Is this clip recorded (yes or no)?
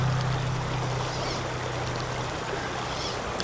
yes